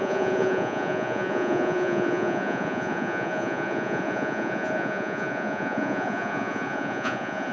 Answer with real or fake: fake